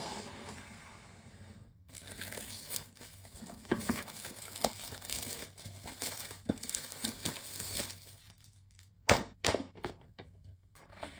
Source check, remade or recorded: remade